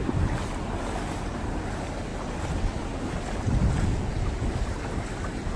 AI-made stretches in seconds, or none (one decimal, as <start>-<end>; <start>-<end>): none